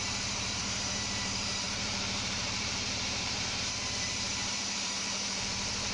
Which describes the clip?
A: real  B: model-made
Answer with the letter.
B